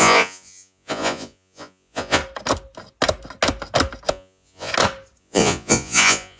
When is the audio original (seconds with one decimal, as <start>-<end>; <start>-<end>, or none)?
2.2-4.1; 4.7-5.2

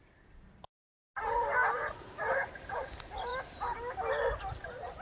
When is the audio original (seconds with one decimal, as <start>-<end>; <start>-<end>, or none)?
0.0-5.0

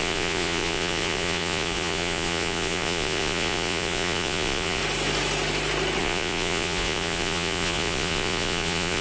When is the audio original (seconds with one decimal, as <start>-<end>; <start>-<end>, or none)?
4.8-6.0

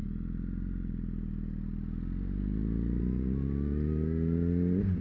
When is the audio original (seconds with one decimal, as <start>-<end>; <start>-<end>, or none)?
0.0-5.0

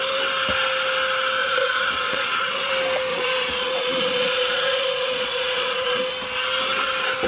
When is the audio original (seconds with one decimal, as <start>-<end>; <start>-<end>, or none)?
0.0-1.4; 2.7-3.1; 6.0-7.3

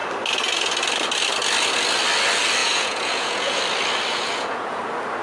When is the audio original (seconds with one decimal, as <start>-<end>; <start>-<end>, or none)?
0.0-2.6; 3.6-4.1; 4.8-5.2